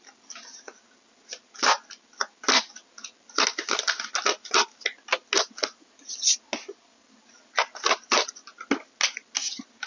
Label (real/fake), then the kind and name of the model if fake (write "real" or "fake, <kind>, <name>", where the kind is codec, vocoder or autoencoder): real